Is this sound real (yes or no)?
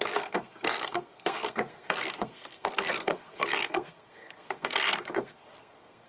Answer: no